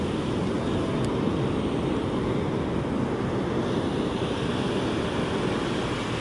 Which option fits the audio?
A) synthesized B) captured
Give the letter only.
B